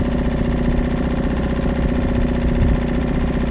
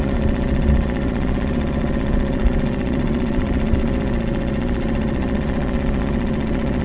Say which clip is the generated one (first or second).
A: second